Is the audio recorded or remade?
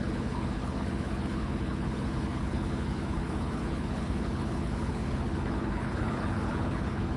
remade